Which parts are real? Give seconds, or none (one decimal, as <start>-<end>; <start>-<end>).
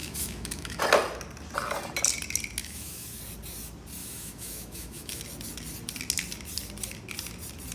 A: 0.8-2.6; 3.2-4.0; 5.2-7.7